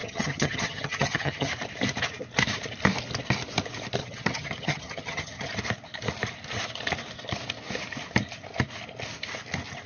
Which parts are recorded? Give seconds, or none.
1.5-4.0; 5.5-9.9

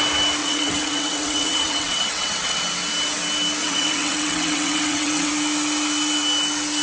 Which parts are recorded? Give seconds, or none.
0.0-0.4; 2.6-3.6; 5.3-6.8

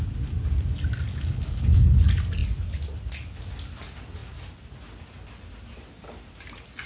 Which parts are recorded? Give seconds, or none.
0.0-1.1; 2.0-6.9

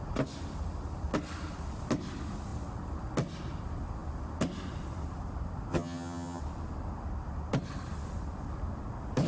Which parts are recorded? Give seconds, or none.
0.0-5.7; 6.4-9.3

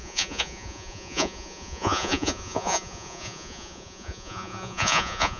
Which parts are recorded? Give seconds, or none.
none

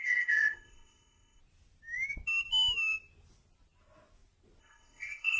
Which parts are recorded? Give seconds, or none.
1.4-4.6

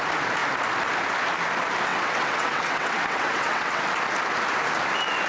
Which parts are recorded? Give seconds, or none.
0.0-1.9; 3.8-5.3

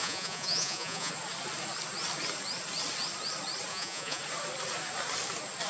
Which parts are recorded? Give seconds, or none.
1.1-3.7; 4.2-5.7